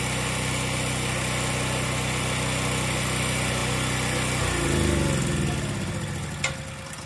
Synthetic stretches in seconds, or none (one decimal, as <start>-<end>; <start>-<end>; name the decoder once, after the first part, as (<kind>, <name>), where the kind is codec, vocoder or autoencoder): none